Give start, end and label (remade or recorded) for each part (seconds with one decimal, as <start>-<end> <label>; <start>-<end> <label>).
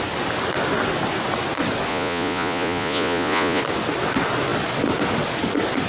0.0-1.9 recorded; 1.9-3.6 remade; 3.6-5.9 recorded